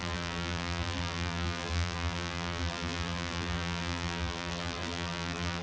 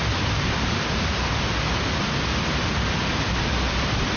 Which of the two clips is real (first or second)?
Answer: second